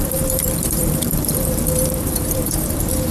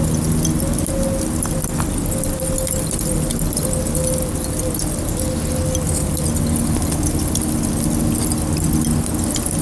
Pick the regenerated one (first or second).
first